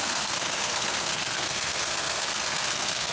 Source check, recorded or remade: remade